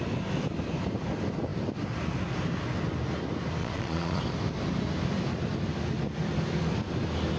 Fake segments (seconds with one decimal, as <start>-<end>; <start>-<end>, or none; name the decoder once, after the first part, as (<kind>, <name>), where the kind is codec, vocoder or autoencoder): 3.6-4.2 (vocoder, Vocos)